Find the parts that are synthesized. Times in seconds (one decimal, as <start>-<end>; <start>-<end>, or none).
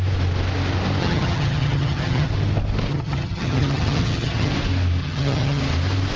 1.0-2.3; 2.9-4.5; 5.0-5.6